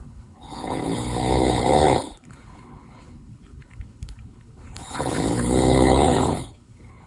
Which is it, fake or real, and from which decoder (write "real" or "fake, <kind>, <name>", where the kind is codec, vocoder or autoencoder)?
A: fake, codec, HILCodec